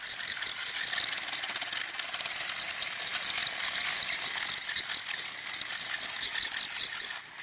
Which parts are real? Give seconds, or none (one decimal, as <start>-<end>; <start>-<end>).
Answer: 0.0-7.4